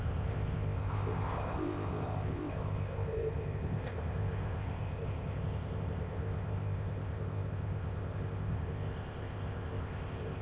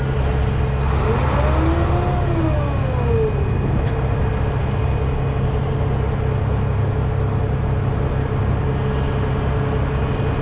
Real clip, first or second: second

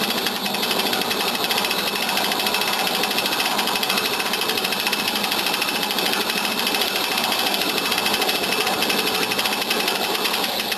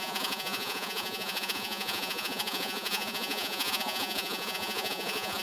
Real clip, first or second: first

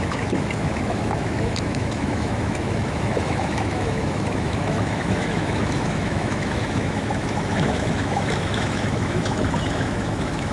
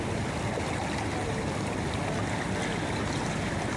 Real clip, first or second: second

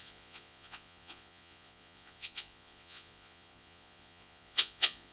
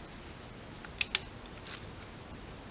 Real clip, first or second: second